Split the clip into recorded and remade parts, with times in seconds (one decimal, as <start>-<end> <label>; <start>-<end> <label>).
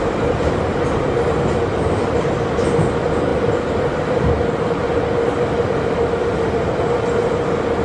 0.0-7.8 recorded